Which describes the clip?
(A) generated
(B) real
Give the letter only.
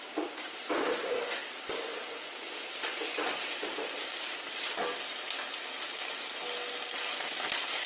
B